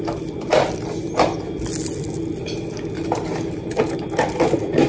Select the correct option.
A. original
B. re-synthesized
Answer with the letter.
A